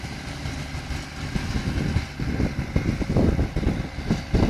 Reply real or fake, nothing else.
real